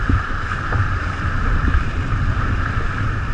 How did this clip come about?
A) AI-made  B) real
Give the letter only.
A